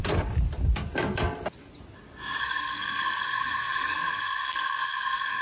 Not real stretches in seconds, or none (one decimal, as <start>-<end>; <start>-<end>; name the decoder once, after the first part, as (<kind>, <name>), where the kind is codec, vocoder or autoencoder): 2.4-5.4 (codec, SNAC)